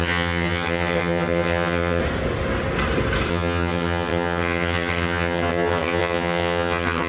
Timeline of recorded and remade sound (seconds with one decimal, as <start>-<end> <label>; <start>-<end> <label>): 0.0-2.0 remade; 2.0-3.3 recorded; 3.3-7.1 remade